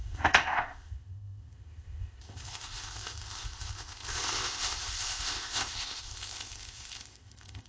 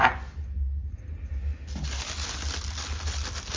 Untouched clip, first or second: second